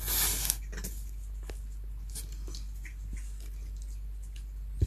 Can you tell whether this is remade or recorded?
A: recorded